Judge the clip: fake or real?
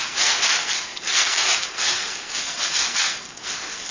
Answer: fake